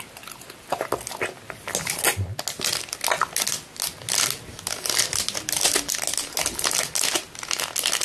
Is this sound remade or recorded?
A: recorded